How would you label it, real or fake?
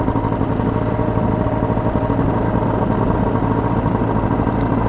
real